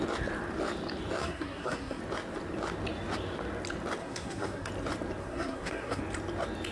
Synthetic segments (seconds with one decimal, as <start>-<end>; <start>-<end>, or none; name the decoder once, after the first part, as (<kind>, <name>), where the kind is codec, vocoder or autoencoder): 1.2-2.0 (codec, SNAC); 4.0-4.7; 5.2-6.0